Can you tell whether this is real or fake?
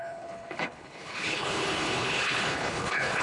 fake